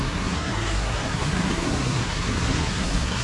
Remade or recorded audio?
remade